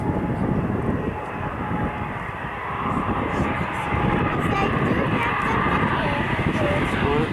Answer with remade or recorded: recorded